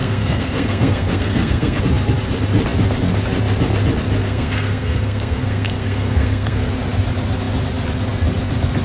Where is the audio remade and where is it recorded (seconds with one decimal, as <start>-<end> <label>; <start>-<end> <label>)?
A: 0.0-1.8 remade; 1.8-4.2 recorded; 4.2-6.7 remade; 6.7-8.8 recorded